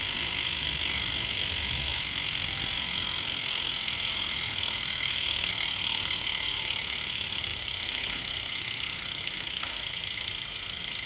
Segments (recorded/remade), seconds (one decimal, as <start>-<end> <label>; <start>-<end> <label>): 0.0-11.1 remade